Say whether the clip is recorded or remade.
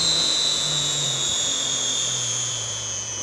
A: remade